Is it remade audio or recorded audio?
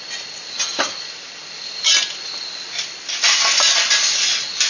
recorded